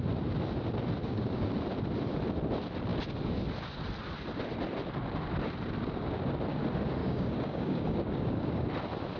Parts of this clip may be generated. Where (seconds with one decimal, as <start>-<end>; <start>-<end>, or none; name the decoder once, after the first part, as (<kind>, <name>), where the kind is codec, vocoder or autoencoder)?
1.0-1.5 (codec, DAC); 7.0-8.7